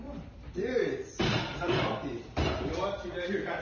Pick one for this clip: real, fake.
fake